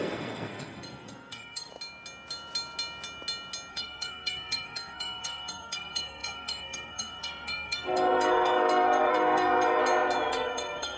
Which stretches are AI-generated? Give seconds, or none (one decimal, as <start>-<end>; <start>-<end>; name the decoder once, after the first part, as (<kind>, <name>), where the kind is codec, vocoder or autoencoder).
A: 0.0-1.7 (codec, SNAC); 3.7-9.8; 10.3-11.0